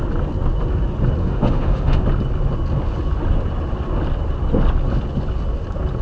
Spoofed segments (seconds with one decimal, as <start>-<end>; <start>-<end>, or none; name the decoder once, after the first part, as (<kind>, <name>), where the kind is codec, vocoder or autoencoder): 1.2-2.0 (autoencoder, DAC-VAE)